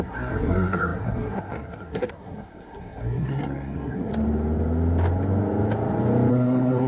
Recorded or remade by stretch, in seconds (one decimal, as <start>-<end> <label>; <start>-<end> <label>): 0.0-4.1 remade; 4.1-6.3 recorded; 6.3-6.9 remade